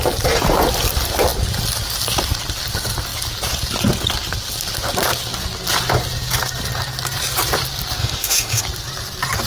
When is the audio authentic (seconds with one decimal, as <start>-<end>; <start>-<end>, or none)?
0.0-8.0; 8.6-9.5